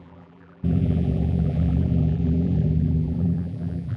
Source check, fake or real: fake